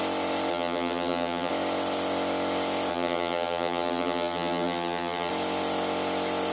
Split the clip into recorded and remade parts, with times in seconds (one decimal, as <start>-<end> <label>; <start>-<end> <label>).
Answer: 0.0-0.5 recorded; 0.5-1.5 remade; 1.5-2.9 recorded; 2.9-5.3 remade; 5.3-6.5 recorded